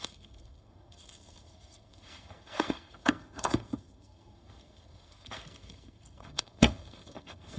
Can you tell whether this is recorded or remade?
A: remade